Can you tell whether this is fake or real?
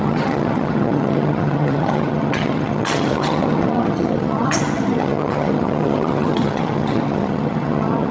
fake